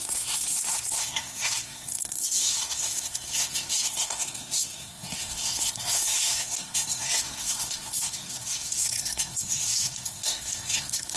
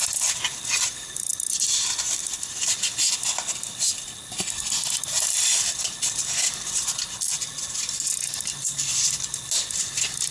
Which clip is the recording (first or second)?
second